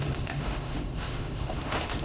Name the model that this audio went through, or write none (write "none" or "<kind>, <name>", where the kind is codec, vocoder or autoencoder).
autoencoder, DAC-VAE